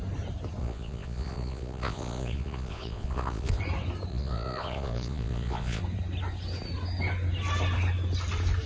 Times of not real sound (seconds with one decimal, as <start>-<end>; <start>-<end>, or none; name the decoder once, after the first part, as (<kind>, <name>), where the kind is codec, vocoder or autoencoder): 0.6-3.6 (vocoder, Vocos); 4.1-5.8